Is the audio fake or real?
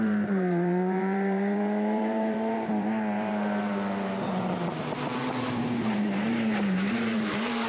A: fake